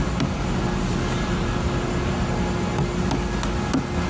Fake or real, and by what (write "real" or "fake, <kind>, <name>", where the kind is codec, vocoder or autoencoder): real